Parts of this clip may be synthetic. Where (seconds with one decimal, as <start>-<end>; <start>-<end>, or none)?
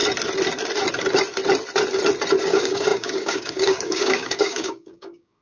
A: 2.4-5.4